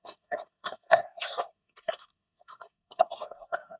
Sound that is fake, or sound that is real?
fake